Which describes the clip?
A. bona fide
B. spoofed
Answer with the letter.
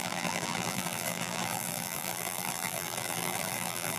B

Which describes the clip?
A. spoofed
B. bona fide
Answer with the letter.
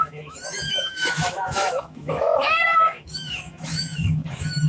A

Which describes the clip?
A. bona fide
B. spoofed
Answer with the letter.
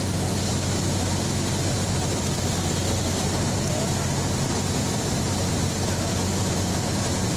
A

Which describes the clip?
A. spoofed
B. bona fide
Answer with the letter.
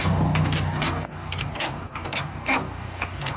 A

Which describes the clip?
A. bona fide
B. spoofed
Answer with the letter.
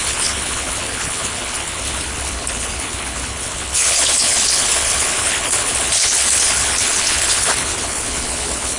B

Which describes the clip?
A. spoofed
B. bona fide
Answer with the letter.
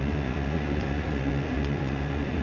A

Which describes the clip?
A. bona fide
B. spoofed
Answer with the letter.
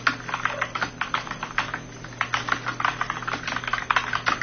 A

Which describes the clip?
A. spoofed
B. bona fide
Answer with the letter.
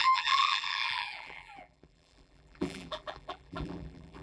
A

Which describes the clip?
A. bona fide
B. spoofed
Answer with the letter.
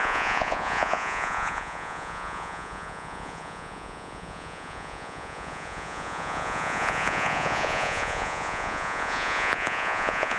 B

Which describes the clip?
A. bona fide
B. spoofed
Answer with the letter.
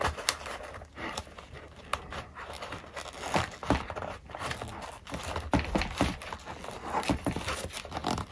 A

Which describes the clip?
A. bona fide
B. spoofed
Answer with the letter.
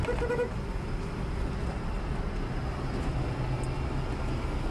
A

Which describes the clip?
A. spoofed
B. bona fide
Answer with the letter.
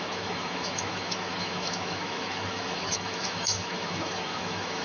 A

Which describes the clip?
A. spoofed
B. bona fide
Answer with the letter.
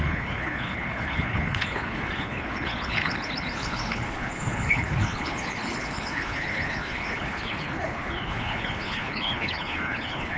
A